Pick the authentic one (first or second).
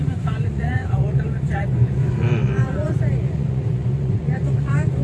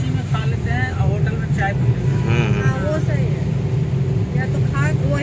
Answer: second